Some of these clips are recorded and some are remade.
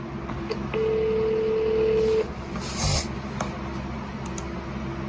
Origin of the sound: recorded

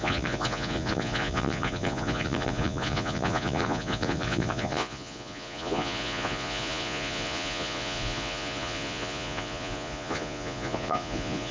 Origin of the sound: remade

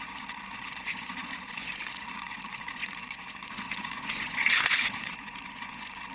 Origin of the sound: remade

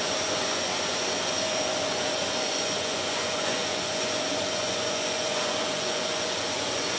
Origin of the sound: remade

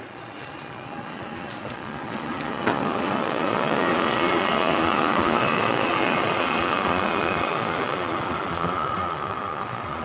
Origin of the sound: remade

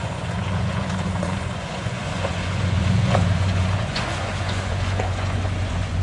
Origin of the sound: remade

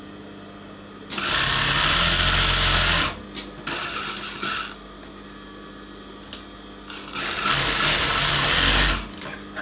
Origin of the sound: recorded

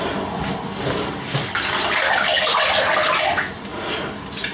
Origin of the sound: recorded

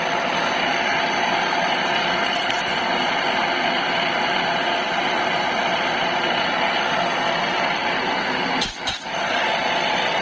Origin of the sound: recorded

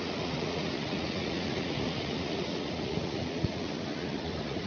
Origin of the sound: remade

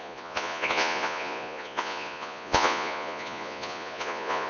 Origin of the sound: remade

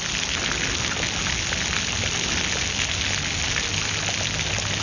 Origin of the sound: recorded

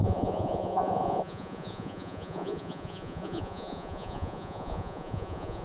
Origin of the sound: remade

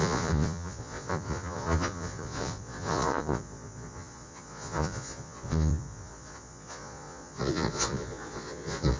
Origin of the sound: remade